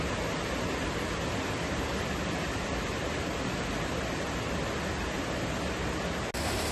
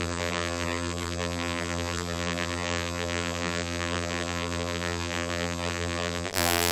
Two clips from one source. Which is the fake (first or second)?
second